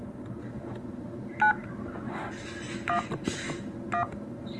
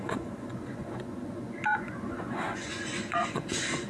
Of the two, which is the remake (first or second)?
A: second